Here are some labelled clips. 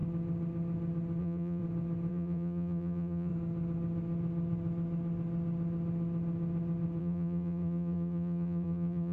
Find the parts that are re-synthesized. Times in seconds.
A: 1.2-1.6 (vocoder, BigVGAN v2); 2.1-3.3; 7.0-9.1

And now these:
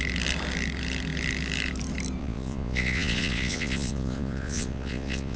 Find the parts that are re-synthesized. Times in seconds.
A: 2.2-5.4 (vocoder, Vocos)

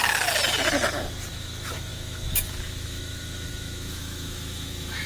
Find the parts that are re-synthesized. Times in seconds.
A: 1.3-5.1 (autoencoder, DAC-VAE)

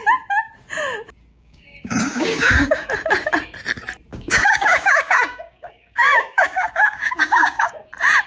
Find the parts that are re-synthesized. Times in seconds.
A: 1.3-2.9 (codec, DAC); 4.1-7.9

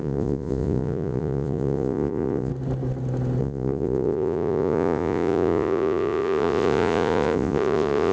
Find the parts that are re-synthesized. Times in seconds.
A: 0.0-2.5 (vocoder, Vocos); 3.4-8.1

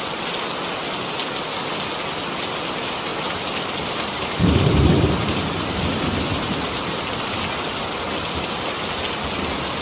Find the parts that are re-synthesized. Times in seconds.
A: 3.1-7.4 (vocoder, BigVGAN v2)

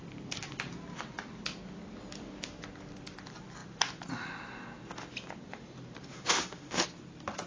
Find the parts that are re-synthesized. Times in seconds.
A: 6.1-6.8 (autoencoder, DAC-VAE)